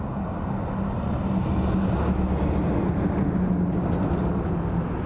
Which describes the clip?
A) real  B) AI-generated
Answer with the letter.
A